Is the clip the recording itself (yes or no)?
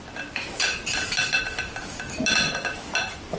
yes